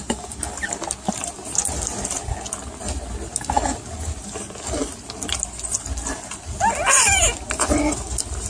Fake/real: real